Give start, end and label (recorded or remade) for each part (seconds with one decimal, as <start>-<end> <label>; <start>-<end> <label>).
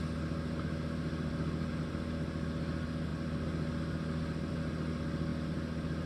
0.0-6.1 recorded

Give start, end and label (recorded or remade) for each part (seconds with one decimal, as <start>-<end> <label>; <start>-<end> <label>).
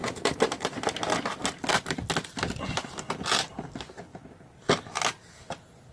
0.0-5.9 recorded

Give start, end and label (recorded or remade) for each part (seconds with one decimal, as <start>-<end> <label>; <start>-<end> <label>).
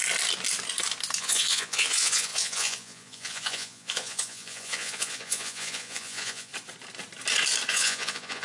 0.0-1.2 recorded; 1.2-6.5 remade; 6.5-7.7 recorded; 7.7-8.4 remade